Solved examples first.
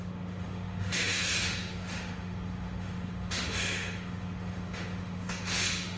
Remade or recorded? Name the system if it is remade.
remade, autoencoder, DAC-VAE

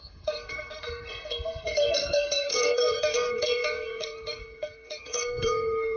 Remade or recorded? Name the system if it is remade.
remade, codec, SNAC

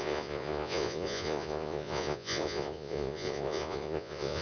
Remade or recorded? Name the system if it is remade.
remade, vocoder, Vocos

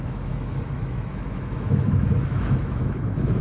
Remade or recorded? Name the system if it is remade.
remade, autoencoder, DAC-VAE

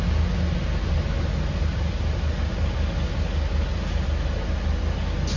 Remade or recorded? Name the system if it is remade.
recorded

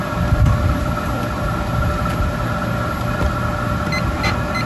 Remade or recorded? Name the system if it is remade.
recorded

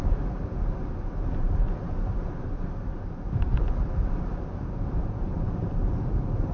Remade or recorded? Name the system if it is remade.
remade, vocoder, BigVGAN v2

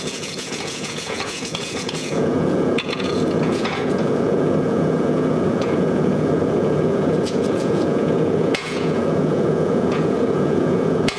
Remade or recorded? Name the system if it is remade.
remade, vocoder, Vocos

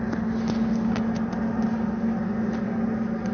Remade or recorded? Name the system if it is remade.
recorded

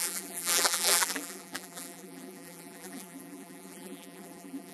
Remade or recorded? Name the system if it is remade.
remade, vocoder, BigVGAN v2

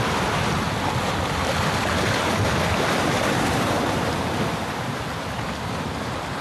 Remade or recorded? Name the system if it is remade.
recorded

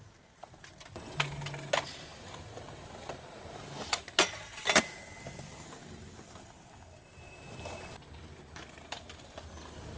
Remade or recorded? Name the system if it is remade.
recorded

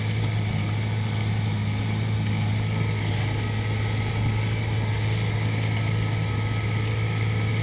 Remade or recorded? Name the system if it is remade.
recorded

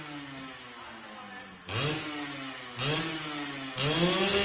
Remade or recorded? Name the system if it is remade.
recorded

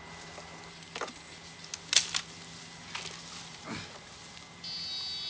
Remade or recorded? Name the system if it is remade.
recorded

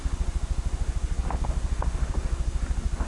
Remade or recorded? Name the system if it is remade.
recorded